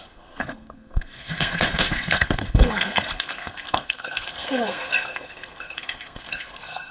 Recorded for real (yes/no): no